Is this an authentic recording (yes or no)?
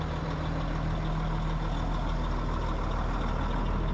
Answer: yes